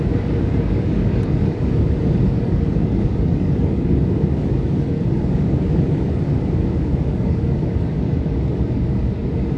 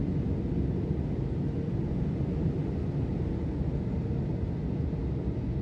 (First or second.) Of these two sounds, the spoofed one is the first